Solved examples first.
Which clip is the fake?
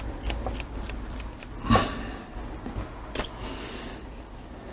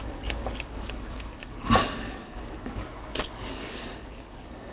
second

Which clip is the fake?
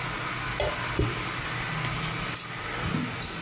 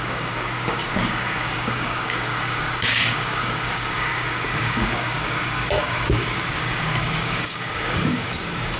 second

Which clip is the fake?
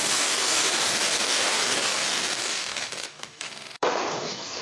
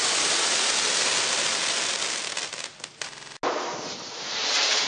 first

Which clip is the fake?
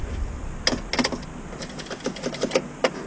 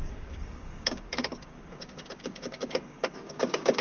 second